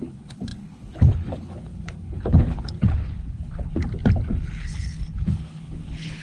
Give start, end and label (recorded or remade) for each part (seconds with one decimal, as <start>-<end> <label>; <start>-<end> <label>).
0.0-3.7 remade; 3.7-4.3 recorded; 4.3-6.2 remade